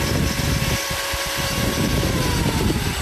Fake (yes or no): yes